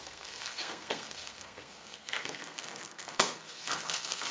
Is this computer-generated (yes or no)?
yes